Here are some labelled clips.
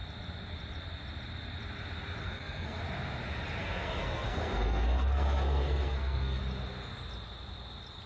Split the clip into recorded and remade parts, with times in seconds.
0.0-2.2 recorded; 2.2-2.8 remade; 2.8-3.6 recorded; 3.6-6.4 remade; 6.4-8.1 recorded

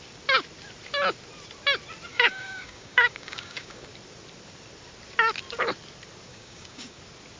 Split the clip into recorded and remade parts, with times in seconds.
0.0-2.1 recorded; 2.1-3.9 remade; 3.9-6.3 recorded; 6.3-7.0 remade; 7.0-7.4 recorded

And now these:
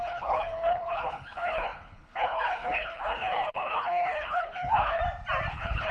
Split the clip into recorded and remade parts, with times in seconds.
0.0-5.0 remade; 5.0-5.5 recorded; 5.5-5.9 remade

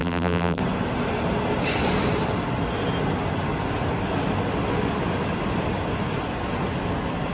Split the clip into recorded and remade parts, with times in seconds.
0.0-0.6 remade; 0.6-7.3 recorded

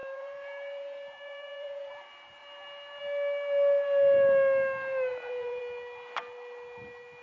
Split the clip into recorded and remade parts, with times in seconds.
0.0-1.9 remade; 1.9-5.1 recorded; 5.1-5.6 remade; 5.6-7.2 recorded

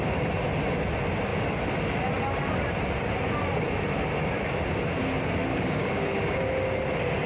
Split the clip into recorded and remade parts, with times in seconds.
0.0-5.5 recorded; 5.5-6.4 remade; 6.4-7.3 recorded